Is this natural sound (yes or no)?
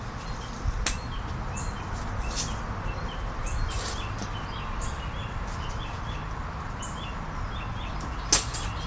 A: yes